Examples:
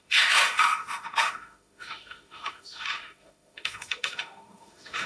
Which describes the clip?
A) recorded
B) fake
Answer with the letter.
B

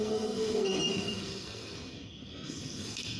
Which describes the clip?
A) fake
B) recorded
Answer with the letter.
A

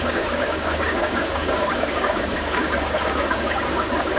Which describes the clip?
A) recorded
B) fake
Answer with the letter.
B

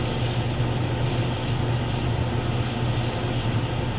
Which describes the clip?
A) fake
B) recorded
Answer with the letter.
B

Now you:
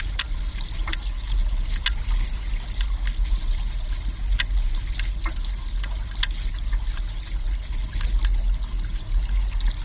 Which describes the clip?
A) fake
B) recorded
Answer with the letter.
B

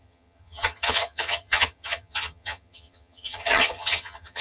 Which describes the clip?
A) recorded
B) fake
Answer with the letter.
B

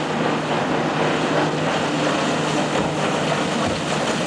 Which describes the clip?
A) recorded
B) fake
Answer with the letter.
A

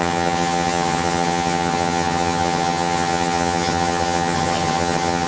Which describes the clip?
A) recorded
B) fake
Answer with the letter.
B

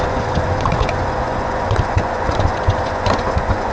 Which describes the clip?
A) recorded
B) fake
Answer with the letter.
B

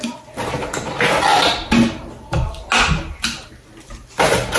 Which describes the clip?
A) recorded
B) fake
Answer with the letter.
A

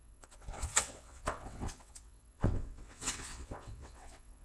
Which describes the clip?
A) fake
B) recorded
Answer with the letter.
A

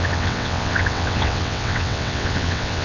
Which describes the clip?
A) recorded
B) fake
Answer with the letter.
B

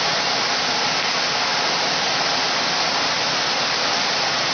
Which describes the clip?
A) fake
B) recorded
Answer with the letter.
B